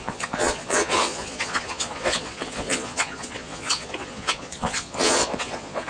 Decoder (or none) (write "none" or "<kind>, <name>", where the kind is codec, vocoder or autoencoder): vocoder, Vocos